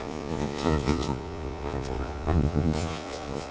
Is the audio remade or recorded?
remade